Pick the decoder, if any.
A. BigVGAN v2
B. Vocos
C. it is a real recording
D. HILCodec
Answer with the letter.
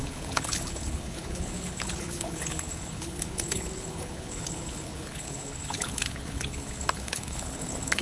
D